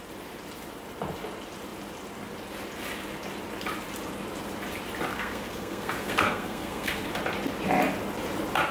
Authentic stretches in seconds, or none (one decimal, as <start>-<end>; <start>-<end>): 0.0-5.1; 7.1-8.7